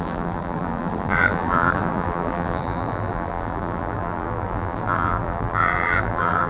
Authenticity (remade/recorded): remade